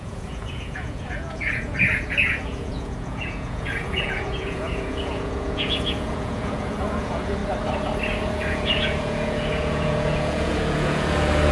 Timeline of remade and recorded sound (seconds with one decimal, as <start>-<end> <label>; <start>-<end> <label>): 0.0-7.4 remade; 7.4-8.2 recorded; 8.2-11.5 remade